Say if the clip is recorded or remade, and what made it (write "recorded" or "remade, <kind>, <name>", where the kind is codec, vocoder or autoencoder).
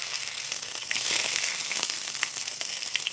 remade, codec, SNAC